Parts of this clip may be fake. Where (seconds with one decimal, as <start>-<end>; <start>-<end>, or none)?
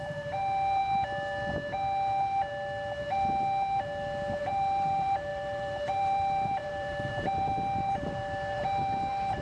0.0-0.8; 4.4-9.4